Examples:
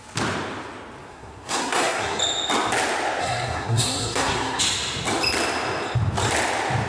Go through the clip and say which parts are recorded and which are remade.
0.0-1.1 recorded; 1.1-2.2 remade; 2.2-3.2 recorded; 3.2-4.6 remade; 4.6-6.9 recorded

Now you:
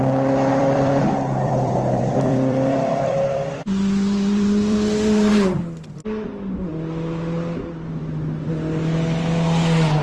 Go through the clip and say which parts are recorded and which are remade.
0.0-0.5 recorded; 0.5-5.3 remade; 5.3-10.0 recorded

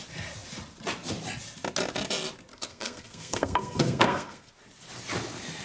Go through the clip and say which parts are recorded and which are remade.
0.0-2.5 recorded; 2.5-4.5 remade; 4.5-5.6 recorded

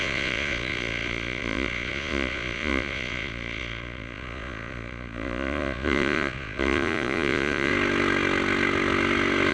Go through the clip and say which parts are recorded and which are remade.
0.0-7.7 remade; 7.7-9.5 recorded

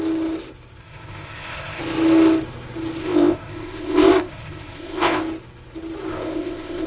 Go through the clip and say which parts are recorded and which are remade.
0.0-0.8 recorded; 0.8-1.8 remade; 1.8-3.0 recorded; 3.0-5.2 remade; 5.2-6.1 recorded; 6.1-6.9 remade